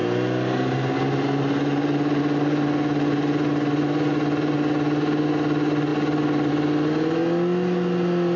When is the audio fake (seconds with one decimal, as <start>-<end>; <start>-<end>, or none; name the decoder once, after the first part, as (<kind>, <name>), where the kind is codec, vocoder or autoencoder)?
none